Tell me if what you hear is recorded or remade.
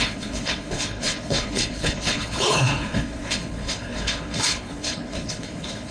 remade